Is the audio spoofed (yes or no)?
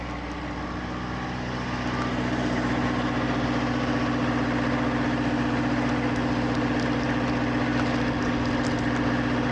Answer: no